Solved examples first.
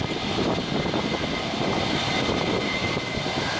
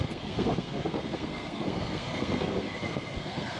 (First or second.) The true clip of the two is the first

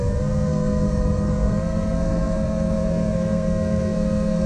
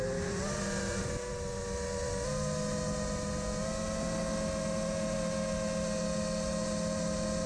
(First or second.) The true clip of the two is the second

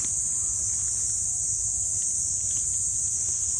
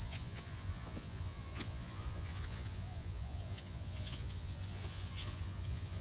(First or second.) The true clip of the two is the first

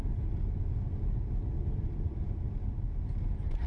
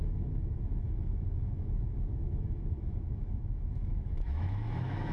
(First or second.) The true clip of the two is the first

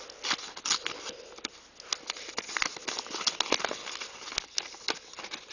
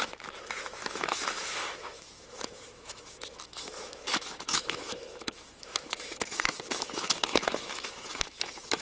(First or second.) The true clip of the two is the first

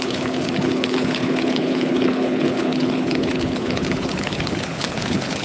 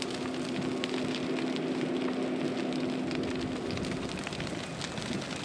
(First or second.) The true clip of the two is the second